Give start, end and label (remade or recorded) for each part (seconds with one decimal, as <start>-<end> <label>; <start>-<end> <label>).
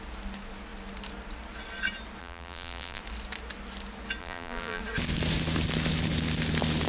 0.0-2.2 recorded; 2.2-3.0 remade; 3.0-4.2 recorded; 4.2-4.8 remade; 4.8-6.9 recorded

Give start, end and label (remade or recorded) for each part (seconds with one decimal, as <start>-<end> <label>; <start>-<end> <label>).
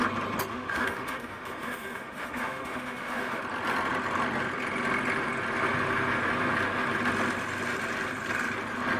0.0-0.5 recorded; 0.5-3.4 remade; 3.4-9.0 recorded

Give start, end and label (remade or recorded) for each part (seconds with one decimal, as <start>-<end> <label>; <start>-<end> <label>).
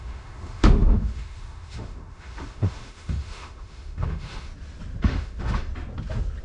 0.0-4.5 remade; 4.5-5.0 recorded; 5.0-5.7 remade; 5.7-6.4 recorded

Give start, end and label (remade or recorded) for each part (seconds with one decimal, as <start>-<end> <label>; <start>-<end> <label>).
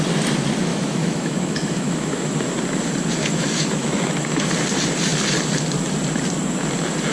0.0-0.7 recorded; 0.7-2.5 remade; 2.5-3.2 recorded; 3.2-4.5 remade; 4.5-7.1 recorded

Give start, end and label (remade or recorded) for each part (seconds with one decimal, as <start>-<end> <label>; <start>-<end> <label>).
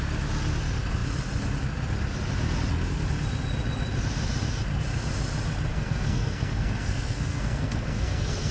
0.0-5.7 recorded; 5.7-8.5 remade